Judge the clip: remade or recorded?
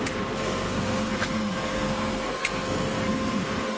remade